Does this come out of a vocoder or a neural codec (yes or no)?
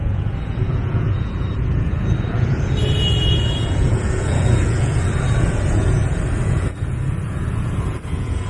yes